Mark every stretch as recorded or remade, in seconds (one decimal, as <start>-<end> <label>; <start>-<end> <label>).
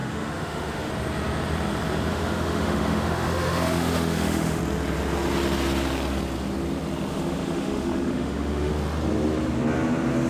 0.0-0.9 remade; 0.9-2.1 recorded; 2.1-4.6 remade; 4.6-7.1 recorded; 7.1-8.7 remade; 8.7-10.3 recorded